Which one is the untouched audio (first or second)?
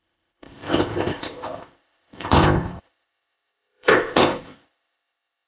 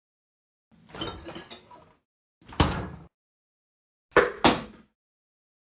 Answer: second